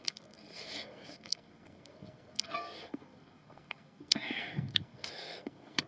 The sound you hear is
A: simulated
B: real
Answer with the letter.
A